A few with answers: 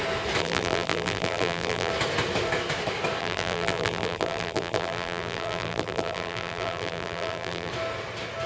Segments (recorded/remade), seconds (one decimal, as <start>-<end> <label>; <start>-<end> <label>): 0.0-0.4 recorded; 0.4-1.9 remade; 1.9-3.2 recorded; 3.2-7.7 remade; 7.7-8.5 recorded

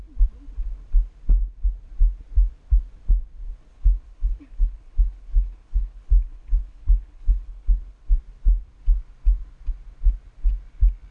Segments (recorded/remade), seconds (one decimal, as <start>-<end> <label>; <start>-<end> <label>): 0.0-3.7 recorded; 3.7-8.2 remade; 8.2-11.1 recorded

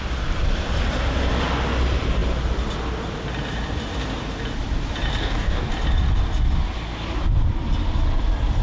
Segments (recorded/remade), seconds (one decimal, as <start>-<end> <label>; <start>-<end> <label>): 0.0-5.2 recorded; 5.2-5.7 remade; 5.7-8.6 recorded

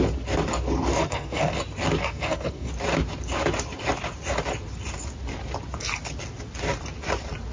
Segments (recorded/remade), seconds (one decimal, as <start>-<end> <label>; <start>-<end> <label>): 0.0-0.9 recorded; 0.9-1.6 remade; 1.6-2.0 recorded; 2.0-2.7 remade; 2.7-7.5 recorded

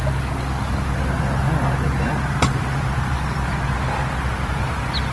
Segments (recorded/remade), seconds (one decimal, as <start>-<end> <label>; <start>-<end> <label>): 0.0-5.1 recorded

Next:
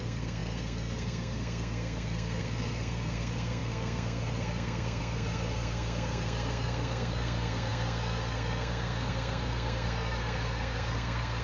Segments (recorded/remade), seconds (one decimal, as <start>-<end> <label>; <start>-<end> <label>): 0.0-11.4 remade

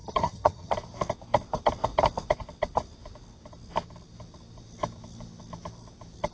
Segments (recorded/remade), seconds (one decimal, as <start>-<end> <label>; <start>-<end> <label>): 0.0-0.7 remade; 0.7-6.3 recorded